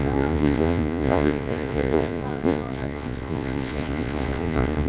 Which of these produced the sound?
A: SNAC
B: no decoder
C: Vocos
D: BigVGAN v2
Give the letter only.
C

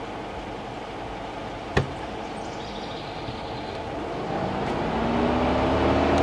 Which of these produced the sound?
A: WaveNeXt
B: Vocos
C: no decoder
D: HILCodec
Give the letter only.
C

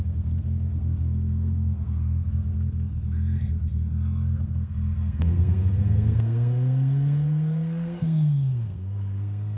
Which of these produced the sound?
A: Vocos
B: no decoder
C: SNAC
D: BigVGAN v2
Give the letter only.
C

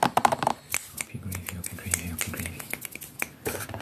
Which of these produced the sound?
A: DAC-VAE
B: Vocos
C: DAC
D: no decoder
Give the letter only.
D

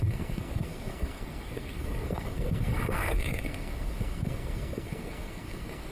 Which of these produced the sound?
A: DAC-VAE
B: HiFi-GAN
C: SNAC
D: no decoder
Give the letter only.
C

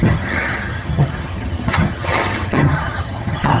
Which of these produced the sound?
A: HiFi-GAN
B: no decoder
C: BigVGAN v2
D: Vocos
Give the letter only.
A